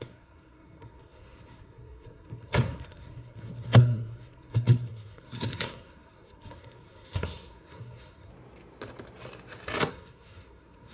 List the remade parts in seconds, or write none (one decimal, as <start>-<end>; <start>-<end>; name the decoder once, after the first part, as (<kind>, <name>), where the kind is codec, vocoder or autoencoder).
0.0-8.3 (codec, SNAC); 9.9-10.9